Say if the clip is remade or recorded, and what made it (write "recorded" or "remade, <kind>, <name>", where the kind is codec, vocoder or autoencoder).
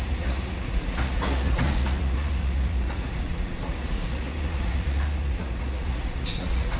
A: remade, vocoder, Vocos